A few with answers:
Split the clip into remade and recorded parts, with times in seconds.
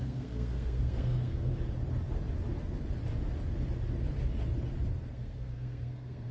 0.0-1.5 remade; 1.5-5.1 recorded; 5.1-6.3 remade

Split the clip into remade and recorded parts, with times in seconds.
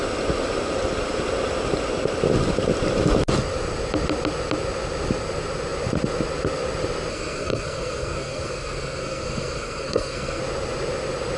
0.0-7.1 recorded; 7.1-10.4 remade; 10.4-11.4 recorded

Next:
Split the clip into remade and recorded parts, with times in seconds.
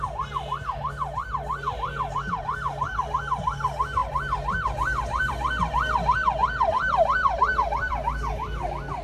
0.0-6.4 recorded; 6.4-7.9 remade; 7.9-9.0 recorded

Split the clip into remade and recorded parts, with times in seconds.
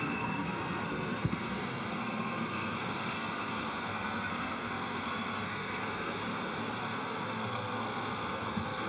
0.0-6.2 remade; 6.2-6.8 recorded; 6.8-8.9 remade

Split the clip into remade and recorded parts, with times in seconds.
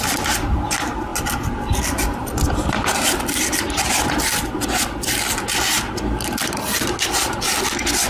0.0-8.1 recorded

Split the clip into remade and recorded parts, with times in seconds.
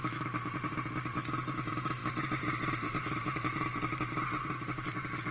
0.0-5.3 remade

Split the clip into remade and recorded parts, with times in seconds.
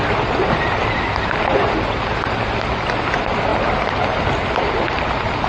0.0-5.5 recorded